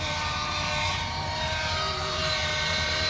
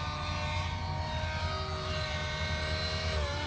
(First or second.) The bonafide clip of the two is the second